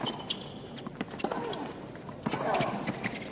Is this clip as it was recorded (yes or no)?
yes